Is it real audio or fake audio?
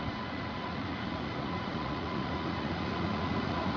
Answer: fake